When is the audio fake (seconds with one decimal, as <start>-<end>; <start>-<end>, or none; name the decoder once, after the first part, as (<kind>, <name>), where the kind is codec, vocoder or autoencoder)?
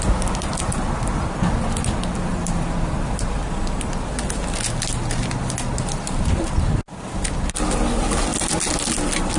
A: none